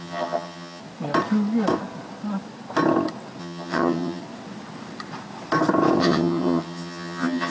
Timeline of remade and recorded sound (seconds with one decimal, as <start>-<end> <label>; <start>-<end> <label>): 0.0-0.8 remade; 0.8-3.4 recorded; 3.4-4.2 remade; 4.2-6.0 recorded; 6.0-7.5 remade